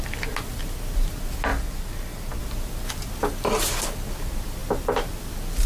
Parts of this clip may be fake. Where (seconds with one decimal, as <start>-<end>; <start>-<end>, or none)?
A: none